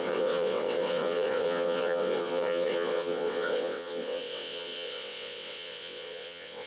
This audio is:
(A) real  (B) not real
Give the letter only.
B